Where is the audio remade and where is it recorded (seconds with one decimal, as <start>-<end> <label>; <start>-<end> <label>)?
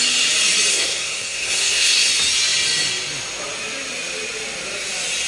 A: 0.0-0.7 recorded; 0.7-2.1 remade; 2.1-5.3 recorded